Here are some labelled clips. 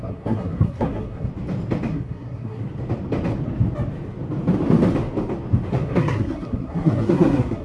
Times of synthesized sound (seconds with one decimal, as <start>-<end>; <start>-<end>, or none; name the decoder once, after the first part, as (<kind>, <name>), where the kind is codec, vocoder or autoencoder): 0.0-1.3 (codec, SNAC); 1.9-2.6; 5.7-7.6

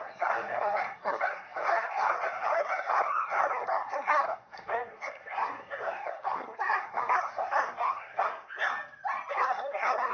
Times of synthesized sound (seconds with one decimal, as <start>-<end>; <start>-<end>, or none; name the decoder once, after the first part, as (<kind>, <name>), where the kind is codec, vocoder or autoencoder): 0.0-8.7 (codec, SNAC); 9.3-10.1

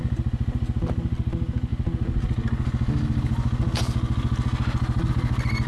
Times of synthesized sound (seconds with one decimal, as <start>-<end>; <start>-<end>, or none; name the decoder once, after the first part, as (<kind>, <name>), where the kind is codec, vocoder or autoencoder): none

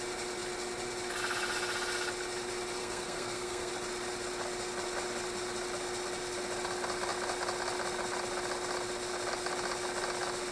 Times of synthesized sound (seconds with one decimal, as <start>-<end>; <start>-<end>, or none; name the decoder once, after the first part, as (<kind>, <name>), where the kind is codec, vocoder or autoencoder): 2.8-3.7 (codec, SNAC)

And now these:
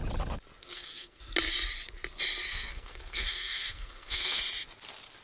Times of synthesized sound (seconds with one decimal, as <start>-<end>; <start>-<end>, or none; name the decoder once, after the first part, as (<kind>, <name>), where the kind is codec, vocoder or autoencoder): 0.6-1.2 (codec, SNAC); 2.5-4.4

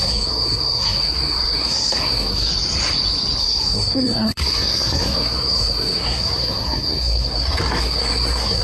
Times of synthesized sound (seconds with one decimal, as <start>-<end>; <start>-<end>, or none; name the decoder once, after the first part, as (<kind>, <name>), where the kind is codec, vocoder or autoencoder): 0.0-2.5 (codec, SNAC); 3.4-8.6

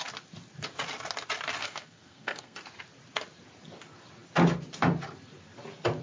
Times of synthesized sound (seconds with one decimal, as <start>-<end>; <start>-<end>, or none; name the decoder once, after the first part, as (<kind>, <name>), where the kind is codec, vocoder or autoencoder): 1.6-2.6 (codec, SNAC)